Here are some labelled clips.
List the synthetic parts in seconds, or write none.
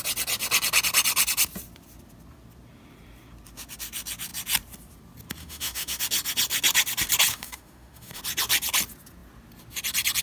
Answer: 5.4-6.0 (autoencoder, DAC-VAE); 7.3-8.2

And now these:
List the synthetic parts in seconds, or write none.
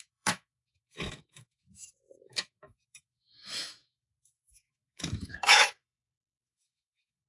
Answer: 0.0-7.3 (autoencoder, DAC-VAE)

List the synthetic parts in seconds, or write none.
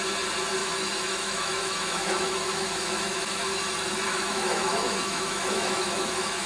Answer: 0.6-3.6 (autoencoder, DAC-VAE); 4.1-6.5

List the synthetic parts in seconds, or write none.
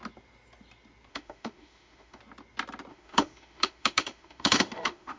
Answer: 1.1-2.2 (autoencoder, DAC-VAE); 2.9-5.2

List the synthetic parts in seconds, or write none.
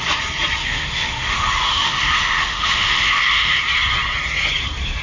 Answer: 0.6-3.6 (autoencoder, DAC-VAE)